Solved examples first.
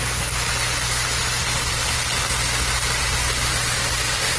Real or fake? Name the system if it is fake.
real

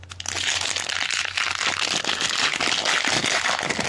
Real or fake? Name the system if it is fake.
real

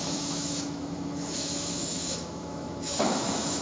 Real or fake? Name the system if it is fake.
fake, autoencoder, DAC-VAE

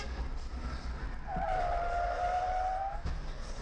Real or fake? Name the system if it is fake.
real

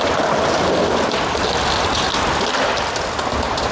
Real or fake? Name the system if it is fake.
real